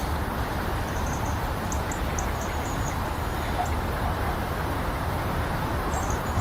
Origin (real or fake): real